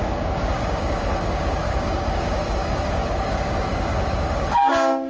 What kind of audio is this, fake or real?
fake